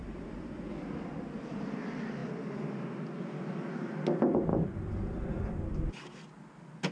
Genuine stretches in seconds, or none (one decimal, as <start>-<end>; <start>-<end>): 0.7-4.5; 5.4-6.9